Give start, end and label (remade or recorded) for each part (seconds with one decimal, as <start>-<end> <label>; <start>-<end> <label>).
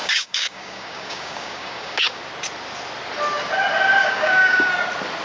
0.0-2.2 remade; 2.2-4.0 recorded; 4.0-4.7 remade; 4.7-5.2 recorded